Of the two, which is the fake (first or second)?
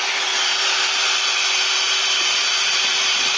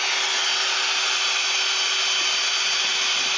first